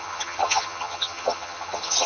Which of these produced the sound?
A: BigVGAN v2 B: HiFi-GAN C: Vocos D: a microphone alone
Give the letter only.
B